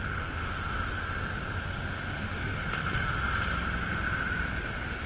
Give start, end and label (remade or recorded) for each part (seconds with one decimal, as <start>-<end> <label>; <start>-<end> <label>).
0.0-0.4 remade; 0.4-1.6 recorded; 1.6-3.1 remade; 3.1-5.1 recorded